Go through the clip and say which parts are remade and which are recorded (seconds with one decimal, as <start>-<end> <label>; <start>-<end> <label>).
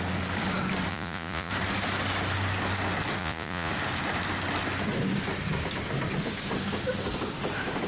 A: 0.0-0.9 recorded; 0.9-1.5 remade; 1.5-3.2 recorded; 3.2-3.7 remade; 3.7-7.9 recorded